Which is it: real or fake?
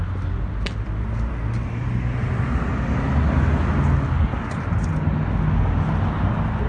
real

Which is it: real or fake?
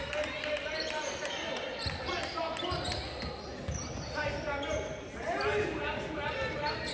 real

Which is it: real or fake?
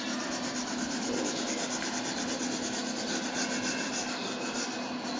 real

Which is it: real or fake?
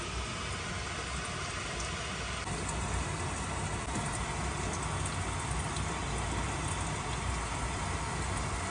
real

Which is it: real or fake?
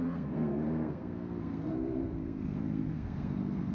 fake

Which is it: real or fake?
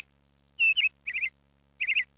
real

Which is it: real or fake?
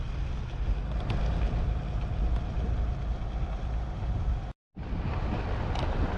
real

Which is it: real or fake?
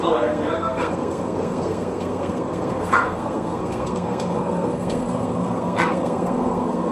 fake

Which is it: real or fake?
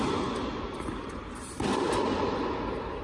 real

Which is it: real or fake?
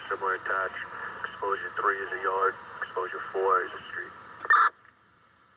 real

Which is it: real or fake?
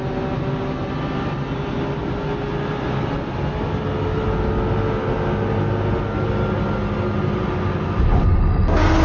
real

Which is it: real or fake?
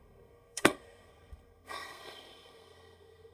fake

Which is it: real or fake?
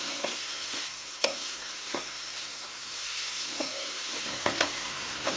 fake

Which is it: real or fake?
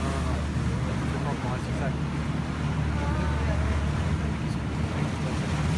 real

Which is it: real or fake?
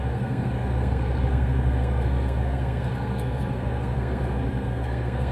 fake